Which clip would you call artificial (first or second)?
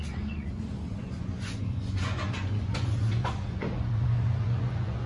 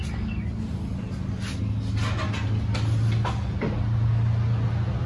first